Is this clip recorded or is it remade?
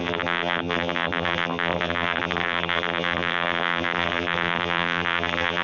remade